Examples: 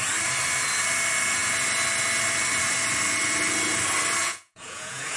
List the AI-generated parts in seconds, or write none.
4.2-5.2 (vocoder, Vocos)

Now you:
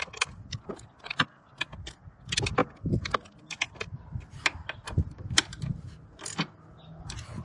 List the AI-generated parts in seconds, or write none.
none